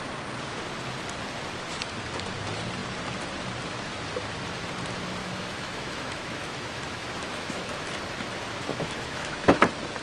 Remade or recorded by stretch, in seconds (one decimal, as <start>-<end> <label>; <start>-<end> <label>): 0.0-5.2 recorded; 5.2-7.9 remade; 7.9-8.7 recorded; 8.7-9.6 remade; 9.6-10.0 recorded